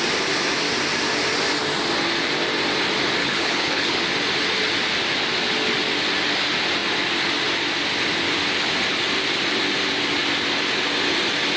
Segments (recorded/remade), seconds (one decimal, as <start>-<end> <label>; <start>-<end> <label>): 0.0-3.2 recorded; 3.2-4.0 remade; 4.0-11.6 recorded